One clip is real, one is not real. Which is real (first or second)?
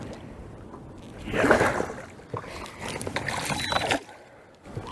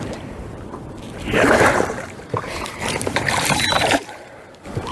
first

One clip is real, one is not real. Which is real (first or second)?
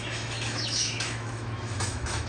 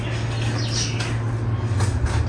second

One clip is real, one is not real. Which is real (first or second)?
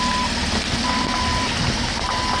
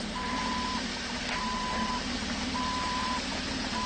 first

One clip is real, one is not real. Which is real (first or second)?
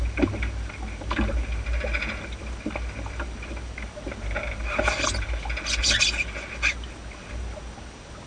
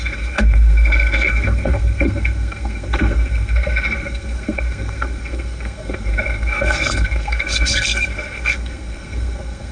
first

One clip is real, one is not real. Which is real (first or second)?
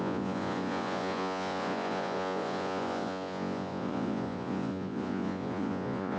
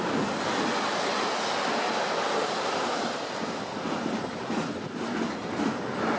second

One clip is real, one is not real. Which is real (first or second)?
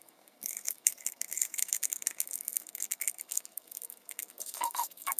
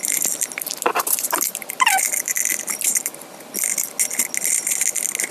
second